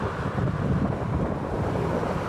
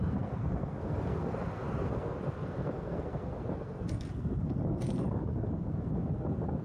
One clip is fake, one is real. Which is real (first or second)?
first